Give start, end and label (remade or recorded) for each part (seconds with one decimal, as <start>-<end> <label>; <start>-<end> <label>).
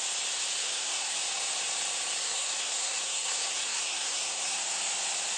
0.0-0.6 recorded; 0.6-1.2 remade; 1.2-2.2 recorded; 2.2-4.6 remade; 4.6-5.4 recorded